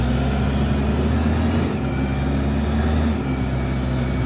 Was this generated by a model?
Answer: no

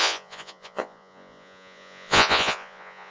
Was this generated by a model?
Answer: yes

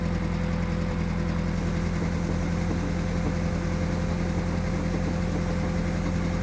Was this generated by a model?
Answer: no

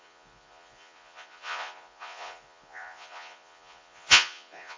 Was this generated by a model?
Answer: yes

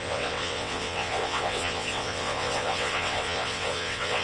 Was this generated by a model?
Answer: yes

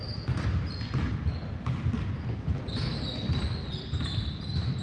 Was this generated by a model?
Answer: no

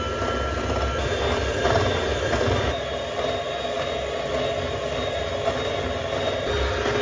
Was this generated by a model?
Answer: no